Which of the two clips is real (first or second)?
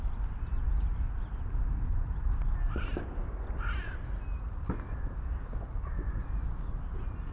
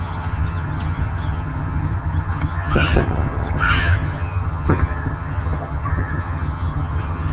first